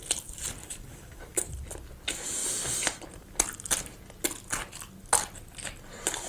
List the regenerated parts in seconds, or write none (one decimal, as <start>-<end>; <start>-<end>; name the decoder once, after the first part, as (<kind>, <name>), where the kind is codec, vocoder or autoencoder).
0.6-1.5 (codec, DAC)